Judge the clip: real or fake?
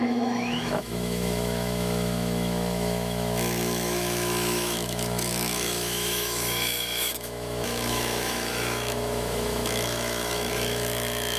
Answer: fake